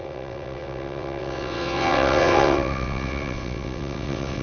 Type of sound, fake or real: fake